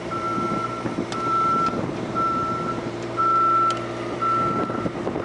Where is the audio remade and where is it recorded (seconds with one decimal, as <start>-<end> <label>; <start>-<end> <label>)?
0.0-3.2 remade; 3.2-4.8 recorded; 4.8-5.2 remade